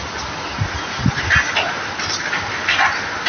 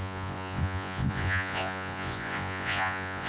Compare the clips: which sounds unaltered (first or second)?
first